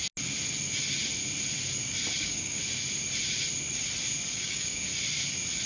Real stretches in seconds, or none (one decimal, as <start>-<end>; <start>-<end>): 0.0-2.2; 2.6-4.3; 4.9-5.7